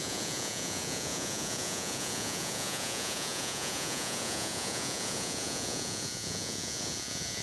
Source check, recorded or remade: remade